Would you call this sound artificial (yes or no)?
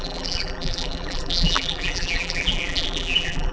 yes